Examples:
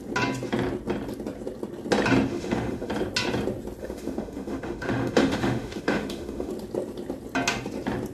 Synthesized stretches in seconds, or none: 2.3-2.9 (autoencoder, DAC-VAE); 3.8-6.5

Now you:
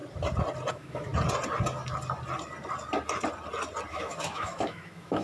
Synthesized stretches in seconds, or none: 0.7-1.1 (autoencoder, DAC-VAE); 3.9-5.2